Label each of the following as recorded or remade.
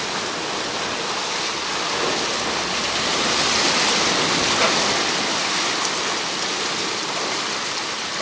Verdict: recorded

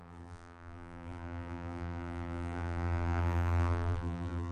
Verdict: remade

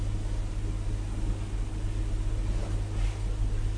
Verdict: recorded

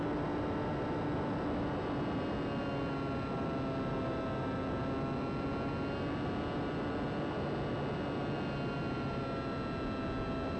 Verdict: recorded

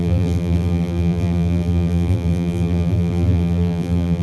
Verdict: remade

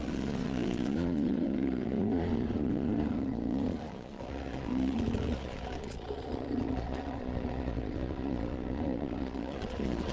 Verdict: remade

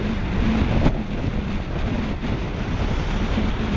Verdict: recorded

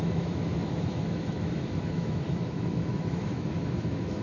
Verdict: remade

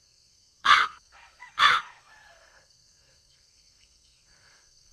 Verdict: remade